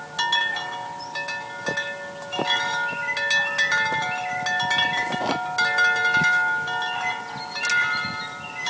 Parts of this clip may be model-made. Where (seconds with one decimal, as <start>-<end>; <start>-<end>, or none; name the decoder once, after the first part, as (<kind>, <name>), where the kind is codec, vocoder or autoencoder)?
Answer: none